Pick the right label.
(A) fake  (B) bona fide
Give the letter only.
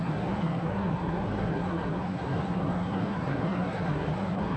A